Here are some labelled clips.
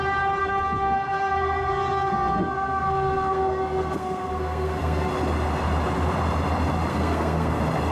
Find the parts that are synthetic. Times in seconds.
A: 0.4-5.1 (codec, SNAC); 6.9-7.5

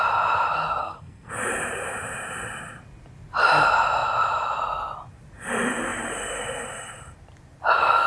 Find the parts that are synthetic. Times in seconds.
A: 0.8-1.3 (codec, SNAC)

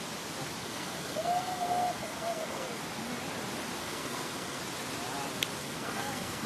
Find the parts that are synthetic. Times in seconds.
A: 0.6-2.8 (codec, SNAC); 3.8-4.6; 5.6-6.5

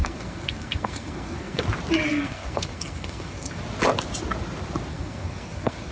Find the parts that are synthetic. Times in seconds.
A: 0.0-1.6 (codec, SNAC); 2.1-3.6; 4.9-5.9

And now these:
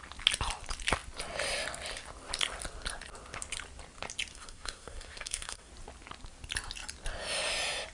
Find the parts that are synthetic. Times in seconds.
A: 4.3-5.7 (codec, SNAC)

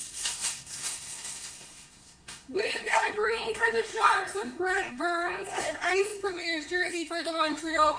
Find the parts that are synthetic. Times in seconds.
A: 0.0-8.0 (codec, SNAC)